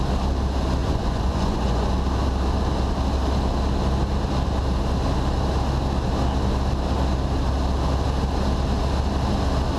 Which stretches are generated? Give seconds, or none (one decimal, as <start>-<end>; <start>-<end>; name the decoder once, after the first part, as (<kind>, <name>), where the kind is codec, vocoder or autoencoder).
0.8-1.9 (vocoder, Vocos)